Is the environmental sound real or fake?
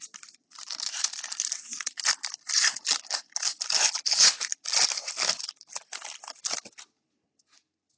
real